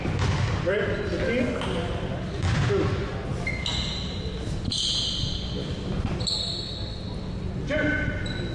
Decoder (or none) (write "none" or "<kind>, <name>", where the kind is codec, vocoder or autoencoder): none